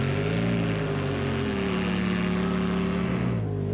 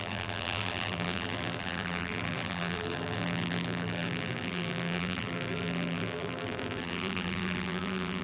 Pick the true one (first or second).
first